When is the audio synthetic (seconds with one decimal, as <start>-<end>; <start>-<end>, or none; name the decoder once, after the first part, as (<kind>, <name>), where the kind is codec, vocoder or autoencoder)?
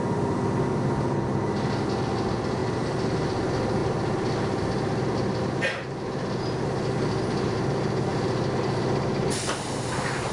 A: none